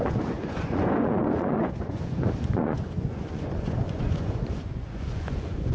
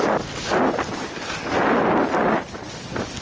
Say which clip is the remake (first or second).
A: first